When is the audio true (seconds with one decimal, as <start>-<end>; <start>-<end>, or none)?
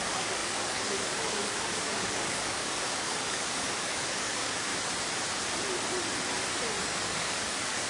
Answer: 4.7-6.8